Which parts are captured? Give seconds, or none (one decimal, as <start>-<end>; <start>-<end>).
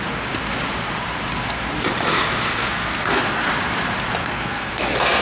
0.0-2.5; 3.5-4.2